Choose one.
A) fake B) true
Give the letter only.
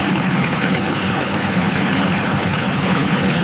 A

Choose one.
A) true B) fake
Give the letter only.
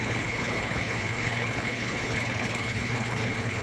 B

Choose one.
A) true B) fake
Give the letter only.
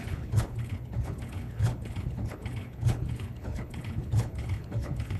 B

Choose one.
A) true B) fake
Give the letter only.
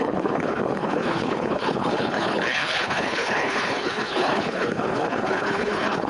B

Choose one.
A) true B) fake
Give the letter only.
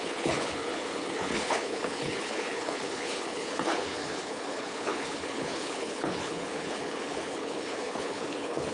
B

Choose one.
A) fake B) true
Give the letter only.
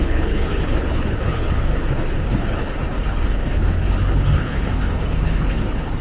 A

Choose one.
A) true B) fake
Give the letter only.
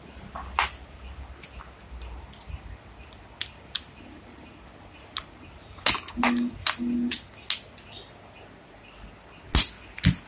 A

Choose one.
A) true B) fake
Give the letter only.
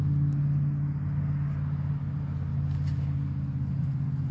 A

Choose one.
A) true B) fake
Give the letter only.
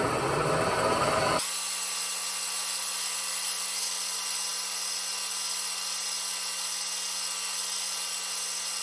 A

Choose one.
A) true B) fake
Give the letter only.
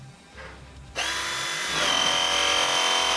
A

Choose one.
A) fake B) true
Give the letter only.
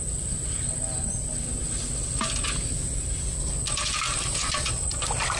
B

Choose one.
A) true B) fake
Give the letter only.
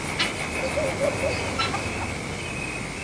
A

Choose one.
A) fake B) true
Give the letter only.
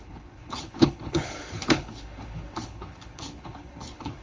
A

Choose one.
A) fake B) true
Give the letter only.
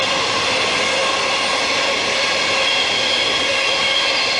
B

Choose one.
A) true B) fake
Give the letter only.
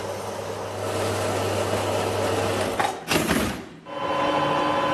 A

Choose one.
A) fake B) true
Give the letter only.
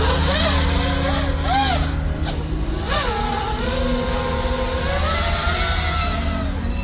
B